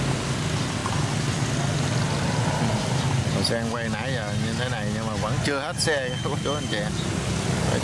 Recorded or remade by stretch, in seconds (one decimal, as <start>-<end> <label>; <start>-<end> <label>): 0.0-7.8 recorded